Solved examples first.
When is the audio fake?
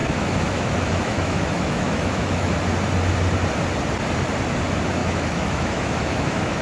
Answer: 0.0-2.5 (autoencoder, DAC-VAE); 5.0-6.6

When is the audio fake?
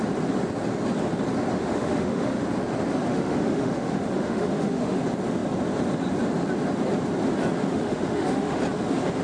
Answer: 1.5-2.4 (autoencoder, DAC-VAE); 3.1-5.0; 7.7-8.6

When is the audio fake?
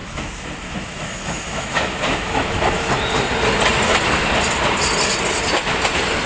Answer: 0.0-2.9 (autoencoder, DAC-VAE)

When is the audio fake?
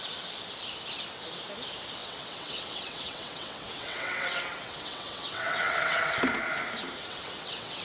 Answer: 2.0-6.1 (vocoder, WaveNeXt); 7.0-7.8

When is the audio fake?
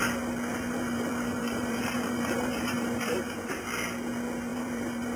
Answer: 0.5-3.6 (vocoder, BigVGAN v2); 4.5-5.2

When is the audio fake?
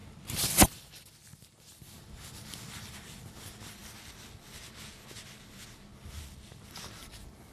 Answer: 0.0-3.3 (vocoder, BigVGAN v2); 5.9-6.8